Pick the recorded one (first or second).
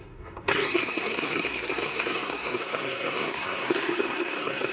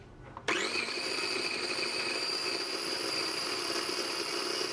second